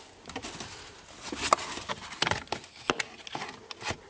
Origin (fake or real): real